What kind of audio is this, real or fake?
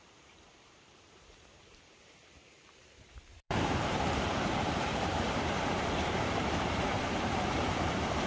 fake